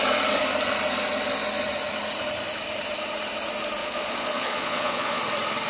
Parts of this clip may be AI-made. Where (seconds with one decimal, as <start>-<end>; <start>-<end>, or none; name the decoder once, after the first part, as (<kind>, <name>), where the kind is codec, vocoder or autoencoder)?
3.8-5.2 (vocoder, Vocos)